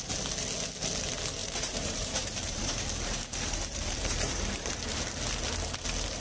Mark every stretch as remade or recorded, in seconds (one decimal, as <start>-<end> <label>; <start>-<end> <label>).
0.0-1.4 recorded; 1.4-5.1 remade; 5.1-6.2 recorded